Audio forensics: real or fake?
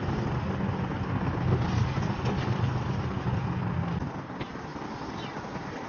real